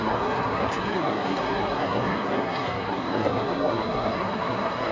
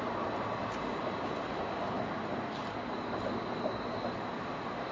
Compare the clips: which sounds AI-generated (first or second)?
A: first